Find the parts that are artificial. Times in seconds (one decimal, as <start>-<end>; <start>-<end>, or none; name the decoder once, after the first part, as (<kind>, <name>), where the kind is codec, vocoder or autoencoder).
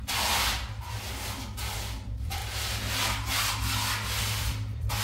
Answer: 0.0-2.4 (vocoder, BigVGAN v2); 4.2-5.0